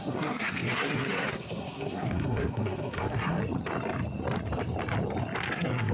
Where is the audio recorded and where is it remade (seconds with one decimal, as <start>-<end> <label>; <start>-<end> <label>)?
0.0-3.4 remade; 3.4-5.5 recorded; 5.5-5.9 remade